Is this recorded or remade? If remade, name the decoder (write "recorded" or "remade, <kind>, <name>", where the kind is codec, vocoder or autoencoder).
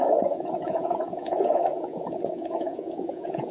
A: remade, vocoder, Vocos